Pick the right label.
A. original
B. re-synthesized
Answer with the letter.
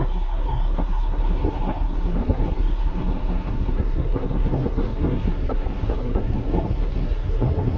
B